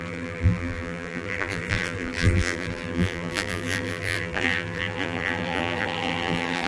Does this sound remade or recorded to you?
remade